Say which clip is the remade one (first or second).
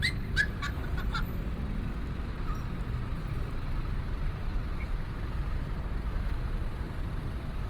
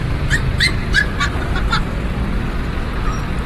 first